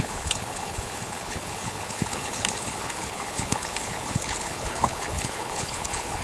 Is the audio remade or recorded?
remade